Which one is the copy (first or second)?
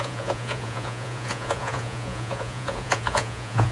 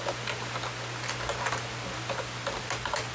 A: first